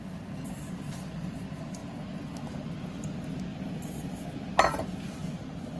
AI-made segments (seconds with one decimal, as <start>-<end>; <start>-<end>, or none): none